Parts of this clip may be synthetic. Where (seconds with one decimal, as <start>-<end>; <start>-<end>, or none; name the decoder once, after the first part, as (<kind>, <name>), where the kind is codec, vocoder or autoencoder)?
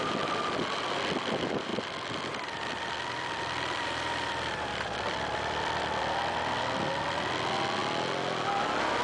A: 0.0-1.7 (vocoder, BigVGAN v2); 2.7-7.8